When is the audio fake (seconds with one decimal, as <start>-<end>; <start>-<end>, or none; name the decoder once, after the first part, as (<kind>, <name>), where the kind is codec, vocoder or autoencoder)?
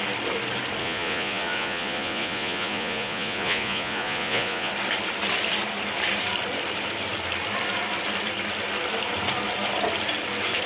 0.8-4.7 (vocoder, Vocos)